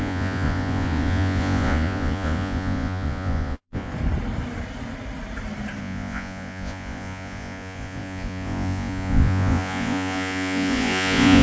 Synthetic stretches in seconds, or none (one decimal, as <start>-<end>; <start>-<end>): 0.0-3.9; 5.8-11.4